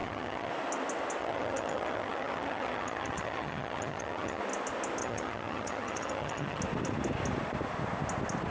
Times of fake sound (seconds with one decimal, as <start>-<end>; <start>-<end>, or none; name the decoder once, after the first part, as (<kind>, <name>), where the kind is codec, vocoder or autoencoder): 0.0-0.5 (vocoder, HiFi-GAN); 1.2-4.4; 5.0-6.6